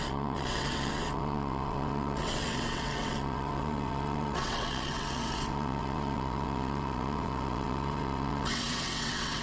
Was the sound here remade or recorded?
remade